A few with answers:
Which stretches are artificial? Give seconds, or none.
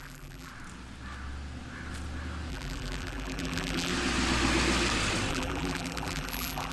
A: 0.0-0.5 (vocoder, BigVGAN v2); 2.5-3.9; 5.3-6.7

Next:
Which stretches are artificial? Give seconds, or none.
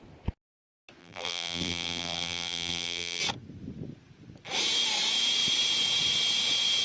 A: 1.0-3.2 (vocoder, BigVGAN v2)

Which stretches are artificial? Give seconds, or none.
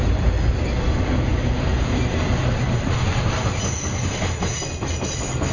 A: 1.3-2.3 (vocoder, BigVGAN v2)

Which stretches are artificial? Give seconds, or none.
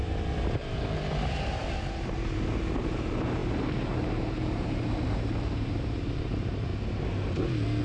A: 0.0-1.6 (vocoder, BigVGAN v2); 2.8-6.7